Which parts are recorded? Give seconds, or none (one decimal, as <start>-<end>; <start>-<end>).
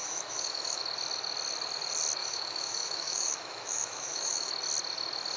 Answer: 0.8-2.2; 4.5-5.4